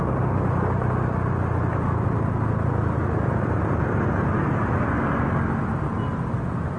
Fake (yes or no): no